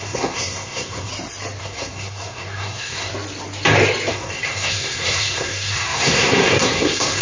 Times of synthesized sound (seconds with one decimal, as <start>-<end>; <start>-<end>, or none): 0.0-1.1; 1.6-3.1; 4.1-7.2